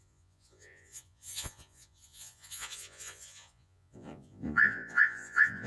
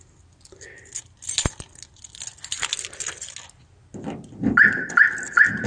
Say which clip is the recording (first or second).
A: second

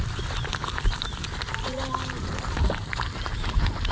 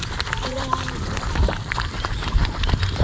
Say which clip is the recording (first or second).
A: first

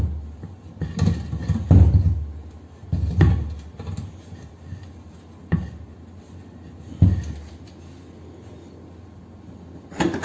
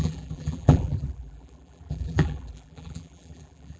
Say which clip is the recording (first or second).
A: first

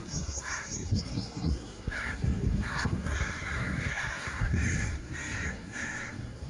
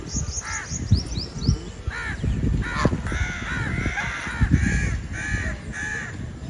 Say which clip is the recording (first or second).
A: second